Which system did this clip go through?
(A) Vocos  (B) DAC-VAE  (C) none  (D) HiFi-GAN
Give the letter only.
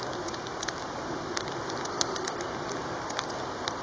C